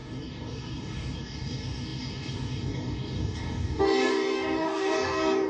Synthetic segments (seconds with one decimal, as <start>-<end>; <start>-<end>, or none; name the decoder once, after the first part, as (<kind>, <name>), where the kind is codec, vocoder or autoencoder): 0.0-5.5 (codec, DAC)